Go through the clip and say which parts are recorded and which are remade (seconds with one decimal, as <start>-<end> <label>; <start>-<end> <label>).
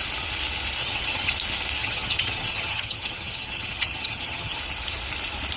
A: 0.0-0.8 recorded; 0.8-1.3 remade; 1.3-1.8 recorded; 1.8-4.6 remade; 4.6-5.6 recorded